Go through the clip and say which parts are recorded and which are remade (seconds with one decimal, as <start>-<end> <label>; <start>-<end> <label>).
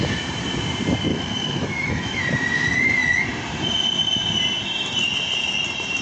0.0-1.1 recorded; 1.1-2.2 remade; 2.2-6.0 recorded